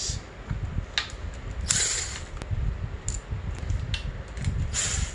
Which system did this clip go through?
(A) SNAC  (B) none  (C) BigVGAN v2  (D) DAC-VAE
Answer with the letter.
B